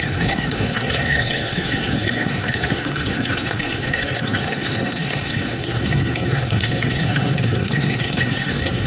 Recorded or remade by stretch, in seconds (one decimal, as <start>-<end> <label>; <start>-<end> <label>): 0.0-8.9 remade